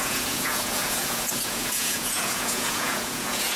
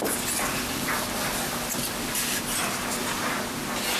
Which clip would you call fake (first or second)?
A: first